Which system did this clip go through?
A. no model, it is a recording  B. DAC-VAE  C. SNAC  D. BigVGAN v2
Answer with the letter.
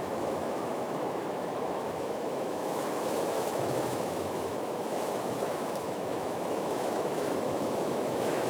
B